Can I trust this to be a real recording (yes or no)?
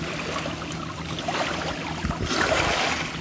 yes